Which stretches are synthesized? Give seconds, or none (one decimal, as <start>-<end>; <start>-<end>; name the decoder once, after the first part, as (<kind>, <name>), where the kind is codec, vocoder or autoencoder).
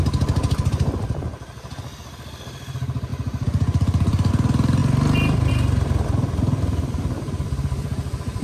3.1-4.3 (vocoder, BigVGAN v2)